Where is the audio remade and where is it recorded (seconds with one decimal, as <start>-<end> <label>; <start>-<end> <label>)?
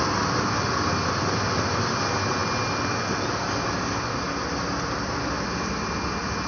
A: 0.0-6.5 recorded